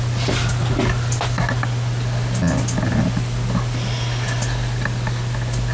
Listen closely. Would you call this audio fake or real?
real